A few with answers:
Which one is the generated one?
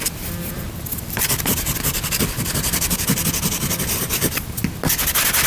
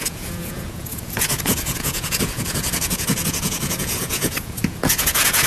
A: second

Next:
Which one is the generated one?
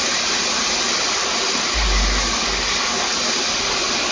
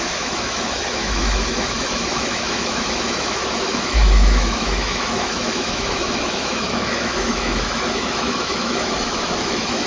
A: second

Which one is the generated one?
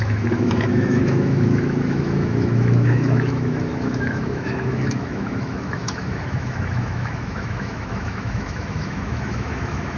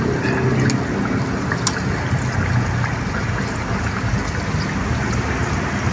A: first